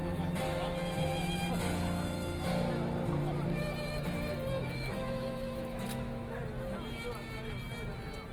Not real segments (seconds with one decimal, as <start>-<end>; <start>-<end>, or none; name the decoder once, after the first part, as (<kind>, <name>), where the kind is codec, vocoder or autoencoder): 4.6-6.4 (autoencoder, DAC-VAE)